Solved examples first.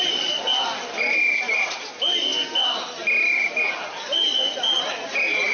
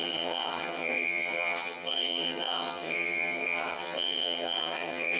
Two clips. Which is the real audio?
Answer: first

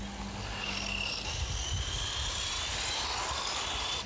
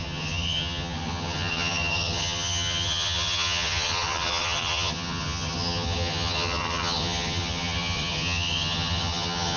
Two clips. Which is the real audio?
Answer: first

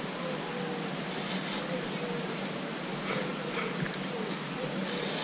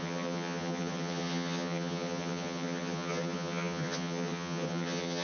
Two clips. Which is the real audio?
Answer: first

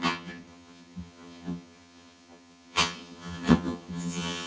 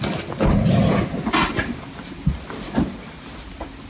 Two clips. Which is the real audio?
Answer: second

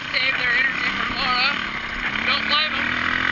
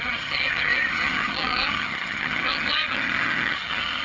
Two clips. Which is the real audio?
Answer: first